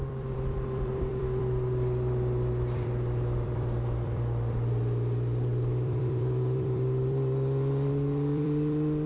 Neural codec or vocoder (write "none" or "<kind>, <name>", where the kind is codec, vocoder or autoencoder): vocoder, BigVGAN v2